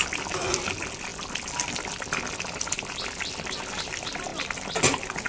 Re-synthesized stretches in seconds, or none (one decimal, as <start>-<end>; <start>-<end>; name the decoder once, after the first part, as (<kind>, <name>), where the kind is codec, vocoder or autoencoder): none